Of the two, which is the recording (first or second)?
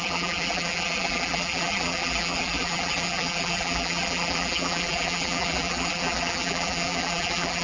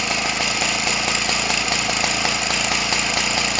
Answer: second